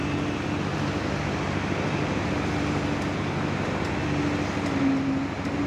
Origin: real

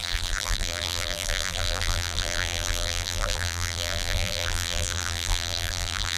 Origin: fake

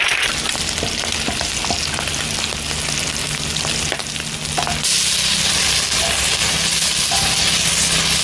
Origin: real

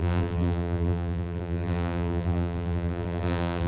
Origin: fake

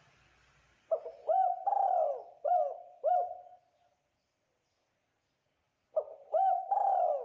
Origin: real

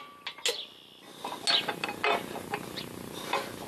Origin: real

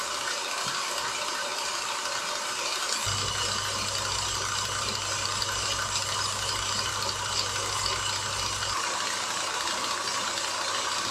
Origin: real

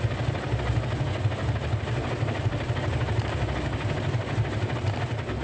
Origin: real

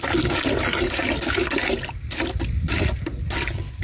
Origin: real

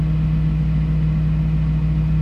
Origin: real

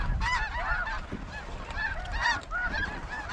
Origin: fake